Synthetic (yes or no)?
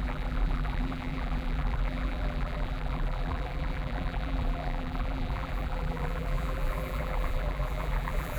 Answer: yes